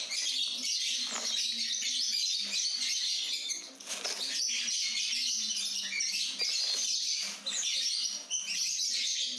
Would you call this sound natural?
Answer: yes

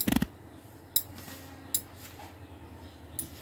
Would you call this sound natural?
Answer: yes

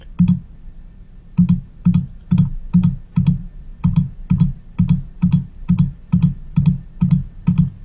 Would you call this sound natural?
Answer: yes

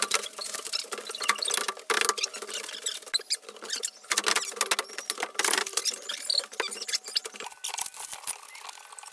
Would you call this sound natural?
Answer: yes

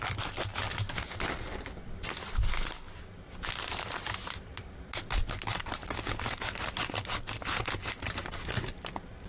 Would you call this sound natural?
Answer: yes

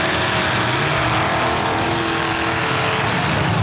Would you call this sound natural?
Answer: yes